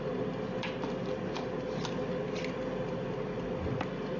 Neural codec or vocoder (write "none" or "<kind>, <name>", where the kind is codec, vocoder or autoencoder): none